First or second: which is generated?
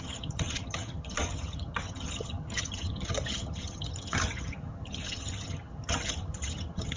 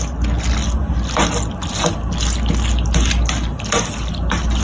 first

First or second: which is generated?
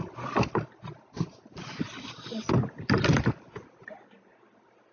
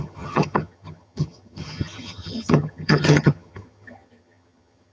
second